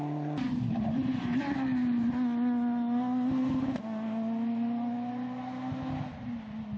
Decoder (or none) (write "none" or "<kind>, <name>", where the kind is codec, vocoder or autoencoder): none